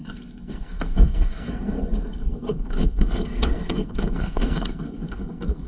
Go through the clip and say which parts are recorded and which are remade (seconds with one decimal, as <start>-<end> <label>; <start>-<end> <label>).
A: 0.0-5.7 remade